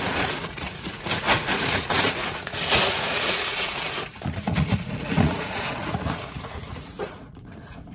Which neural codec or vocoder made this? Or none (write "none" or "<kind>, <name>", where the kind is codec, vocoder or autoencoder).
vocoder, Vocos